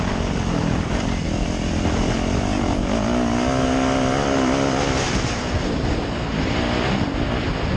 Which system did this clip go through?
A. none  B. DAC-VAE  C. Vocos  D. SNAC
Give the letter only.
A